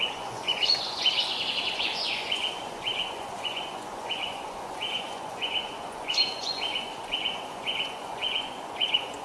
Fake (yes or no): yes